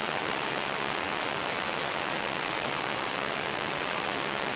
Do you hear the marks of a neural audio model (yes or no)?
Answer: yes